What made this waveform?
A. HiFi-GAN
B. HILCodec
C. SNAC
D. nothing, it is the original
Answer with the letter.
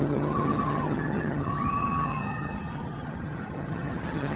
A